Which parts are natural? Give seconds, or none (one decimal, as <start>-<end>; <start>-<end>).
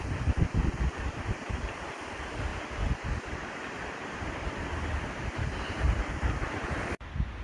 0.0-7.4